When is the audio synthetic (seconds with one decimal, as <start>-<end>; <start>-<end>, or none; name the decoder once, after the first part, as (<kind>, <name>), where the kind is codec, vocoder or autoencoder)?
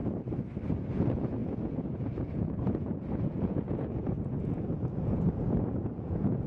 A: 0.9-6.5 (vocoder, Vocos)